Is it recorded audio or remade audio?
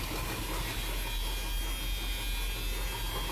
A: recorded